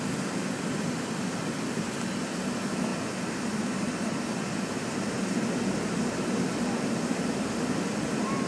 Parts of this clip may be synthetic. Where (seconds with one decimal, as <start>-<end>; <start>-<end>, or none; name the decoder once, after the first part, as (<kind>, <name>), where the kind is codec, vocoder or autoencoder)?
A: none